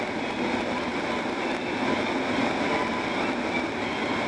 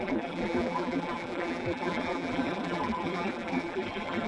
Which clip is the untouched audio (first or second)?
first